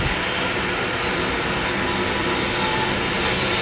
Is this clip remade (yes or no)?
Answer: no